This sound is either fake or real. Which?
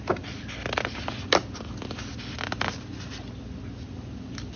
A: real